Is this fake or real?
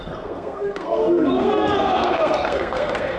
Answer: fake